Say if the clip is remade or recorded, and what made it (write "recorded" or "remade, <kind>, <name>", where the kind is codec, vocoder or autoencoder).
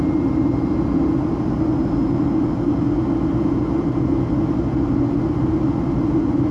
recorded